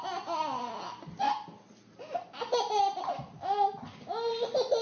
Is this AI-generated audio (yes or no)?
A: no